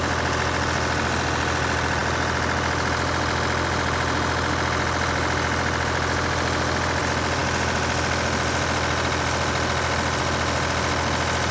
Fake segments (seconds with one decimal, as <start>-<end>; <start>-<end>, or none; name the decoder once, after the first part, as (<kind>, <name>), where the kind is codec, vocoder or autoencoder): none